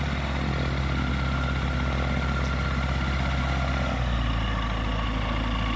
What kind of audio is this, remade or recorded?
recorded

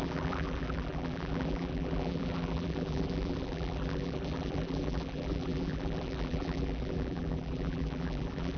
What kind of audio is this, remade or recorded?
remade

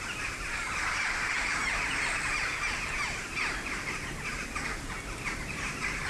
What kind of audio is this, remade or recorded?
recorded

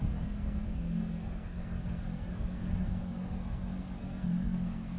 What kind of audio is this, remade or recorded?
remade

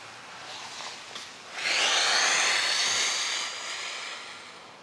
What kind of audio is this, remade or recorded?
recorded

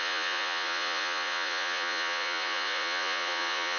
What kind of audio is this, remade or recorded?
remade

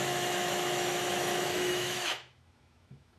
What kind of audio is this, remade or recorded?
remade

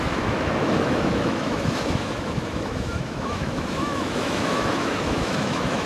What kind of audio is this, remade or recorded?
remade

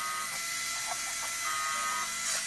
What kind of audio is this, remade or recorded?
recorded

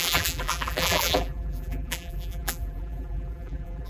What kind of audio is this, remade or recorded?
remade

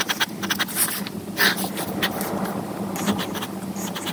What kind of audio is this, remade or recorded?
recorded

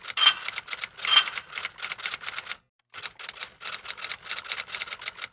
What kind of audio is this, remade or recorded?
recorded